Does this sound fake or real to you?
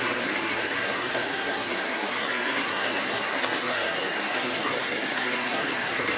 fake